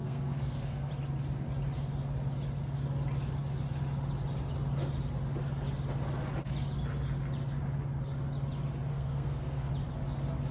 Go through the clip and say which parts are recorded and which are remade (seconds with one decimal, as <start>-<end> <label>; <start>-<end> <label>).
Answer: 0.0-0.9 remade; 0.9-8.9 recorded; 8.9-9.7 remade; 9.7-10.5 recorded

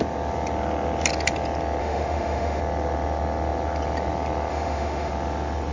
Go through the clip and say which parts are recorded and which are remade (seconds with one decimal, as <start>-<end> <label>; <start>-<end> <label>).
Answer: 0.0-1.8 recorded; 1.8-2.6 remade; 2.6-4.5 recorded; 4.5-5.1 remade; 5.1-5.7 recorded